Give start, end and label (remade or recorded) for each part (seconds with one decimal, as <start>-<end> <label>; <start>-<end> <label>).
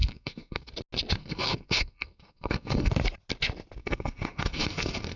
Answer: 0.0-0.7 remade; 0.7-1.2 recorded; 1.2-2.9 remade; 2.9-3.8 recorded; 3.8-5.2 remade